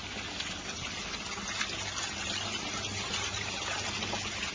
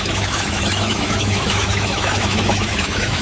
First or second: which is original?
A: first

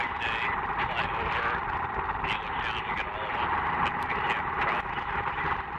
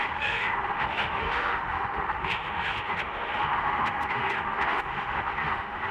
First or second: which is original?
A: first